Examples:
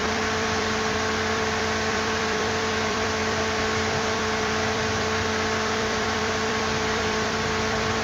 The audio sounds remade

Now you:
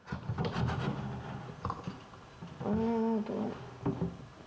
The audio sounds recorded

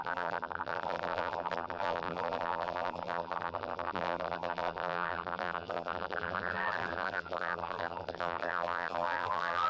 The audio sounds remade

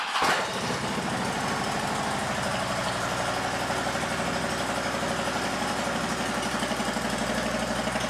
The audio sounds recorded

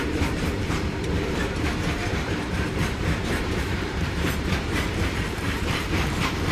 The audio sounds remade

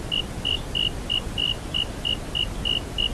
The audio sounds recorded